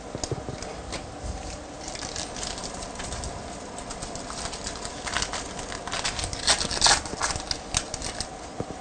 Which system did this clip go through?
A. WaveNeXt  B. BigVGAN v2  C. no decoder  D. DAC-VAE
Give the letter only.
C